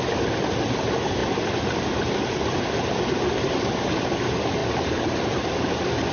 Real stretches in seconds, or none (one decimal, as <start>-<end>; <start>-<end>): 0.0-6.1